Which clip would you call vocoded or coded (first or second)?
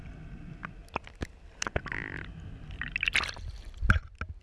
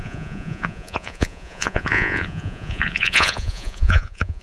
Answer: second